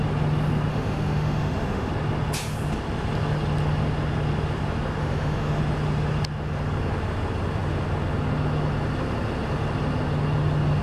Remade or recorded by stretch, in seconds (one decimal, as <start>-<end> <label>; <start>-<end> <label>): 0.0-0.7 recorded; 0.7-1.9 remade; 1.9-5.0 recorded; 5.0-5.6 remade; 5.6-10.8 recorded